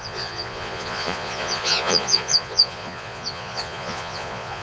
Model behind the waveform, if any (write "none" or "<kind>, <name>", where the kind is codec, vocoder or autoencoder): vocoder, Vocos